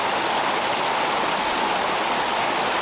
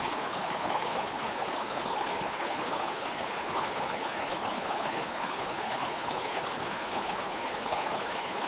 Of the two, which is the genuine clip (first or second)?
first